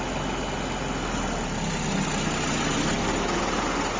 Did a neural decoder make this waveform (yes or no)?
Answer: no